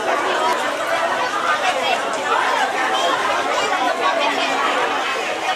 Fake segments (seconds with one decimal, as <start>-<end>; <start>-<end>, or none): none

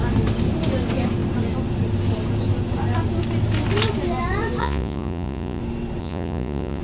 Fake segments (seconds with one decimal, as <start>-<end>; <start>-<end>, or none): 4.6-5.6; 6.0-6.8

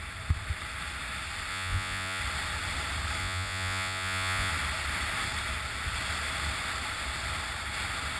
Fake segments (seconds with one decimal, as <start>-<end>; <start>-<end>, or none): 1.5-2.2; 3.2-4.5

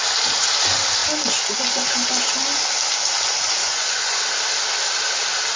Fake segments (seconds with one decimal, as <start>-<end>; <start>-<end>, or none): 3.6-4.2

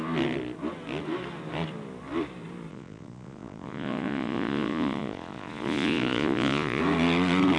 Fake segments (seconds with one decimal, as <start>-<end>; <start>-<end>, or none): 2.7-6.8